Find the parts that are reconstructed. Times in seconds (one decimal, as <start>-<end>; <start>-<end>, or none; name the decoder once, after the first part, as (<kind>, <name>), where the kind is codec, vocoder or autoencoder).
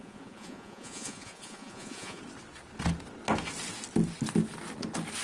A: 0.0-2.2 (vocoder, Vocos)